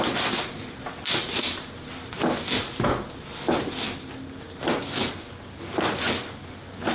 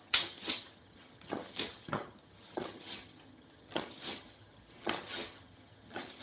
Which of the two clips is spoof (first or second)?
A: second